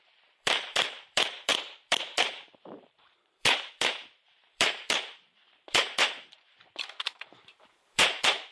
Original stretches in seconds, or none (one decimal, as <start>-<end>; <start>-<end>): none